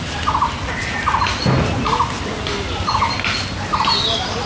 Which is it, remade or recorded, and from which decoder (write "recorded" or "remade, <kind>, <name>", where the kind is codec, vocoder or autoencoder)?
recorded